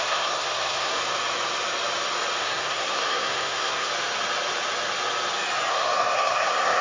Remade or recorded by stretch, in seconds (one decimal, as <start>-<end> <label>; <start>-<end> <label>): 0.0-1.0 remade; 1.0-2.4 recorded; 2.4-3.9 remade; 3.9-5.7 recorded; 5.7-6.8 remade